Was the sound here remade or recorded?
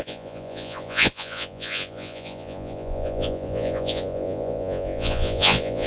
remade